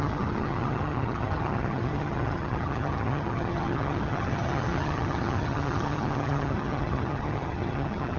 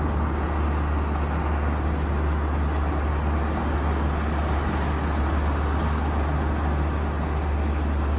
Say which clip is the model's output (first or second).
first